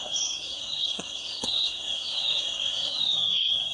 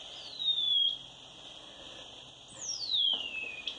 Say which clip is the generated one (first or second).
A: first